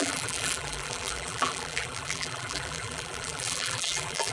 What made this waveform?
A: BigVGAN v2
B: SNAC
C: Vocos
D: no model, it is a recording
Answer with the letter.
A